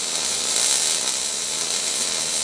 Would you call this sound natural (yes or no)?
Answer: yes